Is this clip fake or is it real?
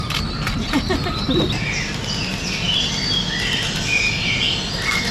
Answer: real